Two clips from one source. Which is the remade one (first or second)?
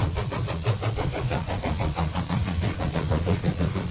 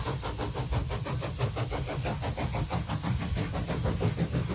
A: first